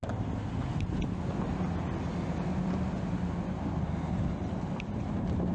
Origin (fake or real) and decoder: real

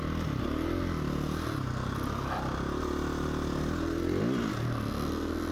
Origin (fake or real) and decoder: real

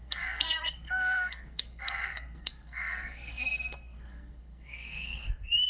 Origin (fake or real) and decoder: fake, codec, SNAC